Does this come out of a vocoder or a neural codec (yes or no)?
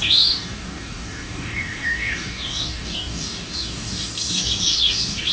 yes